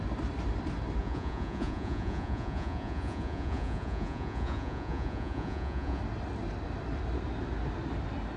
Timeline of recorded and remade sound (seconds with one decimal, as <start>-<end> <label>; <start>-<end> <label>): 0.0-1.0 recorded; 1.0-6.0 remade; 6.0-8.4 recorded